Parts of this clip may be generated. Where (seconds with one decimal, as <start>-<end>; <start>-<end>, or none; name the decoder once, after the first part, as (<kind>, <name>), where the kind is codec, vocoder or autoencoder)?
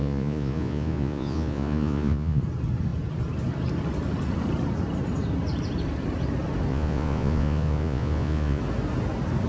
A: 0.0-2.4 (vocoder, Vocos); 6.7-8.6